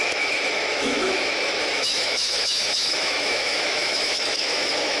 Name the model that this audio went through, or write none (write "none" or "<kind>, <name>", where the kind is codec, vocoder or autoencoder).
autoencoder, DAC-VAE